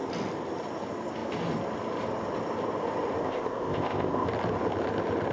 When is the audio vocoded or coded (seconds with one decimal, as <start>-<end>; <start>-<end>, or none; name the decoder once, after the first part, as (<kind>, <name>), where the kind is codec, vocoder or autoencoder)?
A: 3.2-4.3 (codec, ZipCodec)